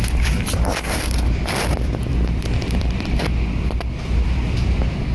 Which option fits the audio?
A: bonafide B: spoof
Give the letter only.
B